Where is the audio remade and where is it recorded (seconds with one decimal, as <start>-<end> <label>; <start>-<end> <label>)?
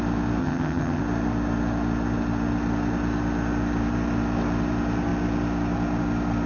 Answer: 0.0-0.4 recorded; 0.4-1.0 remade; 1.0-6.5 recorded